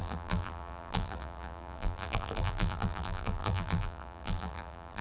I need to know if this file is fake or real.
fake